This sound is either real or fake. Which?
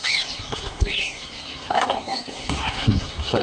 fake